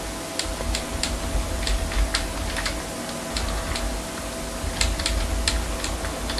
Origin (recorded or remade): recorded